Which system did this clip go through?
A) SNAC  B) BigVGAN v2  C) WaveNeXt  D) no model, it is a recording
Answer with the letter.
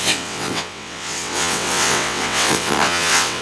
C